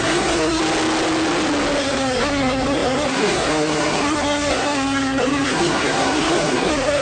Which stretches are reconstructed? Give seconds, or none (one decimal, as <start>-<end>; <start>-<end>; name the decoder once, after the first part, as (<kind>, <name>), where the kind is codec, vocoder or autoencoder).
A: 0.0-0.6 (codec, SNAC); 1.8-7.0